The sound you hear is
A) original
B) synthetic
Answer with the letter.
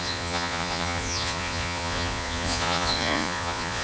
B